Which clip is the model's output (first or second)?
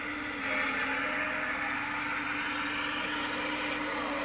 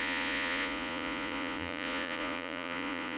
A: second